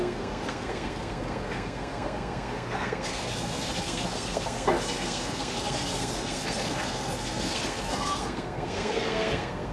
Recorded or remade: remade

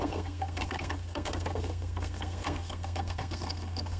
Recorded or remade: remade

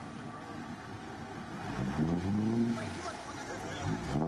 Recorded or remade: recorded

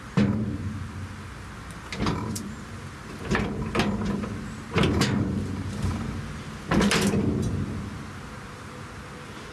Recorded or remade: recorded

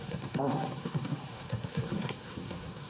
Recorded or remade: remade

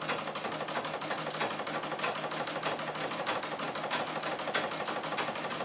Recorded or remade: recorded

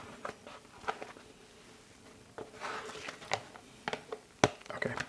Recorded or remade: recorded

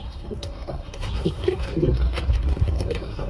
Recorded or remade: remade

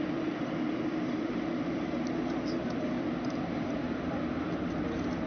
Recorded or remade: recorded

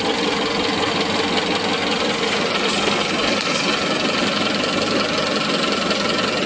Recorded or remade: recorded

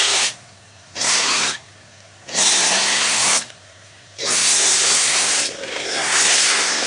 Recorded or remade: remade